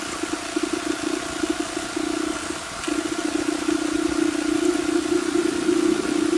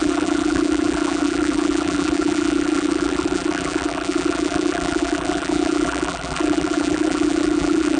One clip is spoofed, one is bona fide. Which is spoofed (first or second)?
second